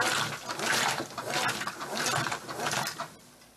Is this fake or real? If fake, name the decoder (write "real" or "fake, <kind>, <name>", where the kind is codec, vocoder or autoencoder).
real